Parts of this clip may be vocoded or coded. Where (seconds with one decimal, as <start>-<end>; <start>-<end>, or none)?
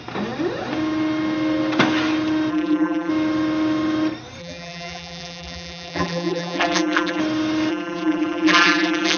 2.5-3.1; 4.4-7.2; 7.7-9.2